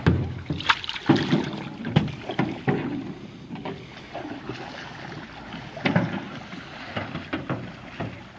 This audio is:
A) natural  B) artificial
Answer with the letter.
A